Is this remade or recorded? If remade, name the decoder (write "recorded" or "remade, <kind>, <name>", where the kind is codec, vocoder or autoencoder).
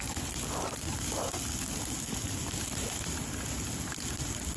recorded